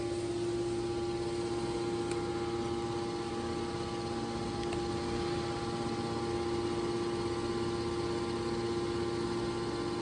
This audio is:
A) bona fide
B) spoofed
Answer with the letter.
A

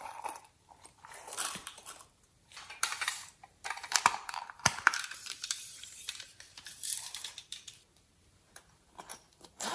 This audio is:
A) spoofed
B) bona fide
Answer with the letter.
A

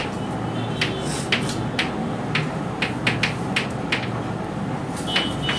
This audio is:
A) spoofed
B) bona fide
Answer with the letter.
B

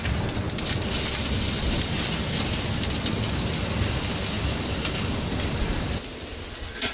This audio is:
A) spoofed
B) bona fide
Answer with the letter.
B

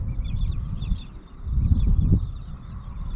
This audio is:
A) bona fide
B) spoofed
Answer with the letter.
A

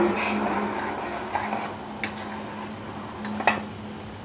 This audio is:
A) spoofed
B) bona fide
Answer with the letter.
B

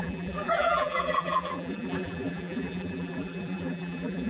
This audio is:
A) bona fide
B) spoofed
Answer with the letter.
B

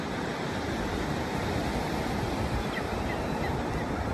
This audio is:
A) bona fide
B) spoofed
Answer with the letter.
A